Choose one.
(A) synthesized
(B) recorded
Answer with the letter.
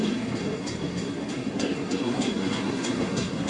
A